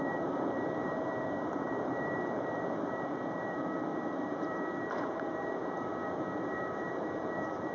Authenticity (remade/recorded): remade